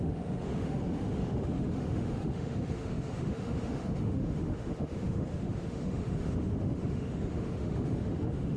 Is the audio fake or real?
fake